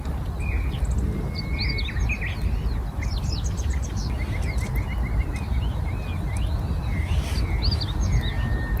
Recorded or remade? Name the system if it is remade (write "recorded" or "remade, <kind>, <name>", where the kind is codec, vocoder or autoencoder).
recorded